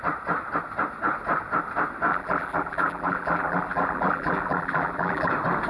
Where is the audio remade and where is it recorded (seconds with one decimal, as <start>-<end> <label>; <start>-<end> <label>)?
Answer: 0.0-2.1 recorded; 2.1-5.3 remade; 5.3-5.7 recorded